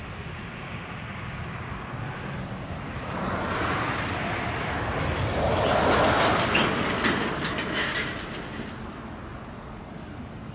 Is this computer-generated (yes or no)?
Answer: no